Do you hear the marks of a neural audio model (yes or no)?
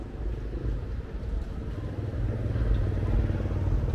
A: no